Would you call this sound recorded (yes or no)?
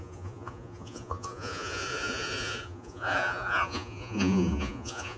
no